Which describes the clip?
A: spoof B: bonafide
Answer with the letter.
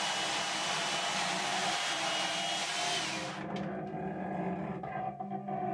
B